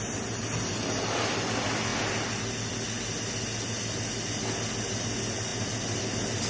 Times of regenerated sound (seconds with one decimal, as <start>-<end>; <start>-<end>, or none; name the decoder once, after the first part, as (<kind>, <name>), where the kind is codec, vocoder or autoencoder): none